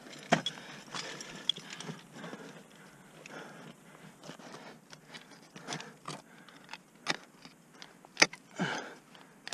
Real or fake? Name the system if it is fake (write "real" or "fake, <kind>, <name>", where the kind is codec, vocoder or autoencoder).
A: real